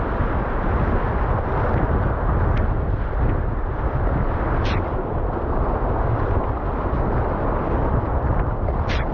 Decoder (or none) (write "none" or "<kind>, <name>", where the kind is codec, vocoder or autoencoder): none